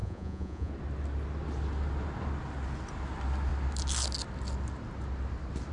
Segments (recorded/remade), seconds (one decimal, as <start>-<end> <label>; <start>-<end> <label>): 0.0-0.7 remade; 0.7-5.7 recorded